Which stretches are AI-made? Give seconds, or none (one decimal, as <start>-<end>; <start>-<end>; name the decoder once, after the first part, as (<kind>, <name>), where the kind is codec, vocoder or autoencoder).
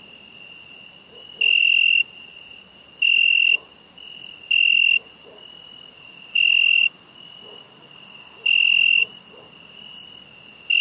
1.6-4.5 (vocoder, BigVGAN v2)